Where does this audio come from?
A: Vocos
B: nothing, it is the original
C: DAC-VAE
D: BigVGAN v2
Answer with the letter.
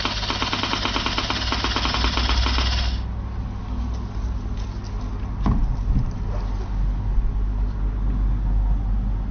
B